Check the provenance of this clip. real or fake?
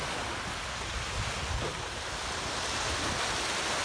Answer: real